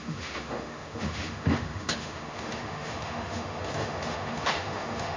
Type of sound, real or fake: fake